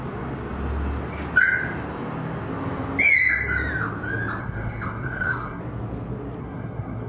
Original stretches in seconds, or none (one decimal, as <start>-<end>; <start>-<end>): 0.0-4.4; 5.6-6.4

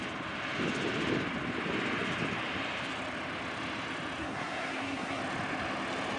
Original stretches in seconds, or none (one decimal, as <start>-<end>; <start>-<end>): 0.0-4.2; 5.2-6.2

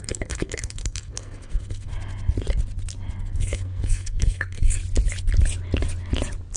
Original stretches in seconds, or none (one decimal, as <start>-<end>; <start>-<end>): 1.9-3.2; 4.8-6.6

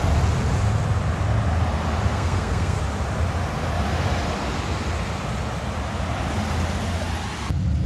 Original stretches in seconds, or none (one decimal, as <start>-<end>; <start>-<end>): 0.0-2.1; 2.8-7.9

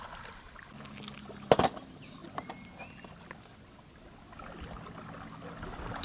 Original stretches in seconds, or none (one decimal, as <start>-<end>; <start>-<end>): 0.0-6.0

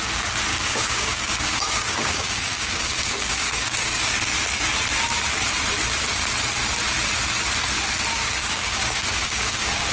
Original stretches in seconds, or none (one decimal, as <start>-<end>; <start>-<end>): 0.0-0.5; 4.0-8.4